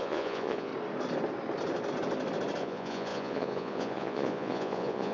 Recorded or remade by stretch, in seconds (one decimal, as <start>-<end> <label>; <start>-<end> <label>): 0.0-0.7 remade; 0.7-2.6 recorded; 2.6-5.1 remade